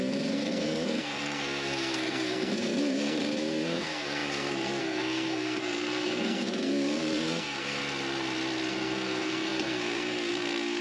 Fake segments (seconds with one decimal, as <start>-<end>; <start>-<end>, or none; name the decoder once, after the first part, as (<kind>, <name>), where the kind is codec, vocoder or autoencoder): 0.0-7.8 (codec, SNAC); 8.7-10.8